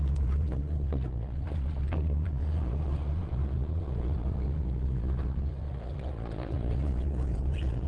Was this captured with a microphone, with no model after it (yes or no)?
no